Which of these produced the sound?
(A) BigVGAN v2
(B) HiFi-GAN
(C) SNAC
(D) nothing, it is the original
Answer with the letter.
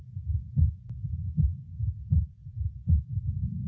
D